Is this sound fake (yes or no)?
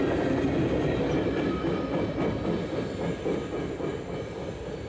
no